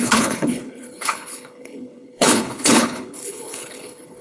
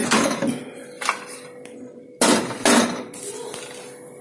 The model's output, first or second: first